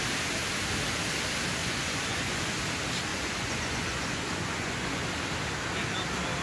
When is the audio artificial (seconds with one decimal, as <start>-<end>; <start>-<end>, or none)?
1.6-2.6; 3.1-5.0